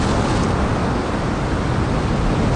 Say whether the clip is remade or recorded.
recorded